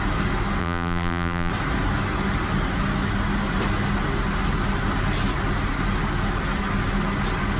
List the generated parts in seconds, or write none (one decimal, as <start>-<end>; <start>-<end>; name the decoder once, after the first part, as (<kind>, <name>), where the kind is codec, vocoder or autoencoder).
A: 0.6-1.5 (vocoder, BigVGAN v2)